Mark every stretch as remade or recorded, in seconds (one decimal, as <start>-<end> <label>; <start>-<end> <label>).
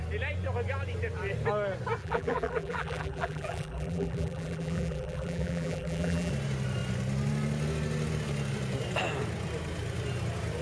0.0-2.0 recorded; 2.0-6.3 remade; 6.3-10.6 recorded